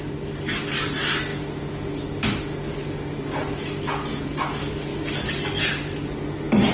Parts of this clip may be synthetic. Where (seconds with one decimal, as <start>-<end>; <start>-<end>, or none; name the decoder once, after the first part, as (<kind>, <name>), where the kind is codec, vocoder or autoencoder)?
none